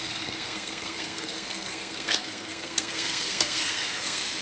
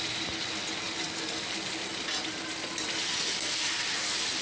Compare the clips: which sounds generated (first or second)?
first